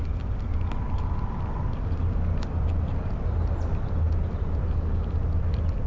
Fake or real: real